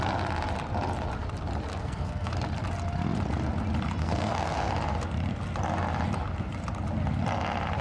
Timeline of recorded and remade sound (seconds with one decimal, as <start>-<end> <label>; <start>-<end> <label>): 0.0-1.7 recorded; 1.7-2.3 remade; 2.3-4.0 recorded; 4.0-4.7 remade; 4.7-7.8 recorded